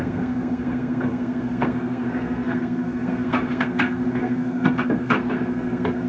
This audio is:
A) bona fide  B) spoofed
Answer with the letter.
B